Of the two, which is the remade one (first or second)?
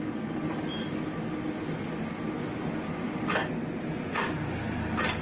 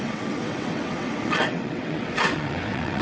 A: second